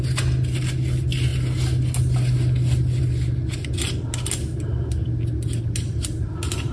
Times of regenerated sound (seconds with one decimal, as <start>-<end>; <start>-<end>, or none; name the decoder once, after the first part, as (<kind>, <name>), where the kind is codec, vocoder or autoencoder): none

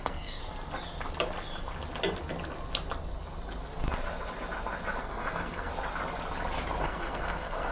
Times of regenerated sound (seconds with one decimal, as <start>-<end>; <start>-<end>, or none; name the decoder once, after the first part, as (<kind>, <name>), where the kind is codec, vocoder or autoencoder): 0.0-0.4 (codec, SNAC); 5.0-5.7; 6.8-7.7

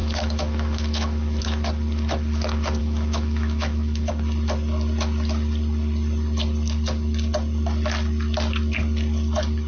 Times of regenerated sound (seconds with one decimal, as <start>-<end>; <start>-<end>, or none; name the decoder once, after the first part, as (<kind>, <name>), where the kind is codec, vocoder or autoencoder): 0.0-1.4 (autoencoder, DAC-VAE); 2.8-4.1

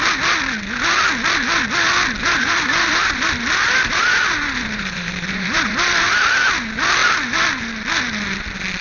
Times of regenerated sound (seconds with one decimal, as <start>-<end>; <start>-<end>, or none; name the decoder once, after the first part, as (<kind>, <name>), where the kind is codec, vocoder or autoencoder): 2.2-6.6 (vocoder, BigVGAN v2)

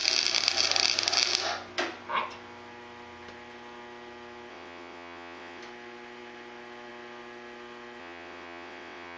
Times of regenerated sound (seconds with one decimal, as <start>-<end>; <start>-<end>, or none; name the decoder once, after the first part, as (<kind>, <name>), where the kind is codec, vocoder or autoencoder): 4.5-5.6 (vocoder, WaveNeXt); 8.0-9.2

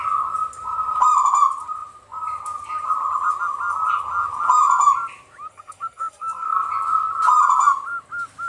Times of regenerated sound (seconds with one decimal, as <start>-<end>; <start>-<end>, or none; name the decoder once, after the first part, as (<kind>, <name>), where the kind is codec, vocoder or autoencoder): 5.5-6.7 (codec, SNAC)